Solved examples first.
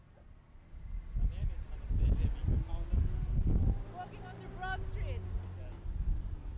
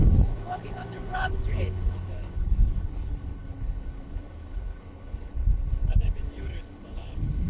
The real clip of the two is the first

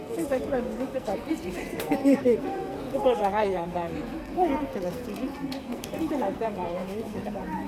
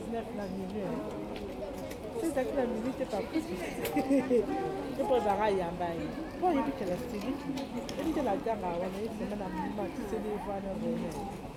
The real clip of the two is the second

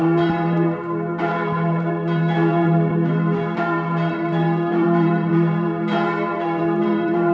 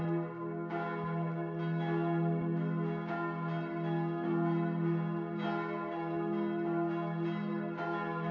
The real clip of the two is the second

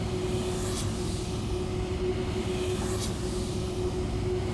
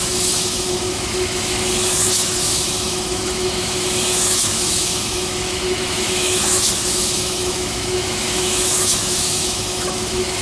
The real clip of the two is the first